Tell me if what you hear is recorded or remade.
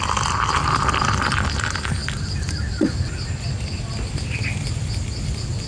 recorded